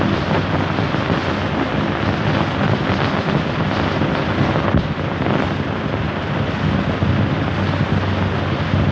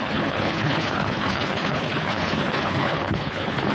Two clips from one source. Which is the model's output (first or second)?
second